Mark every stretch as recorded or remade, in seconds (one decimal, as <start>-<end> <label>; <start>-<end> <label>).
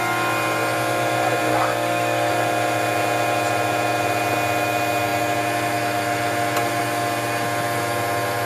0.0-1.5 recorded; 1.5-2.3 remade; 2.3-8.5 recorded